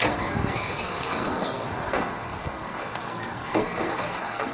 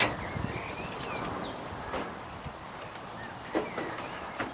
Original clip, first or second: second